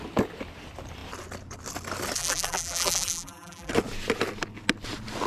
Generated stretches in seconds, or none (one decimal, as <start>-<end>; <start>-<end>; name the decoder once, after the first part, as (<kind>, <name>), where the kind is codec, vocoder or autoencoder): 2.2-3.7 (vocoder, BigVGAN v2)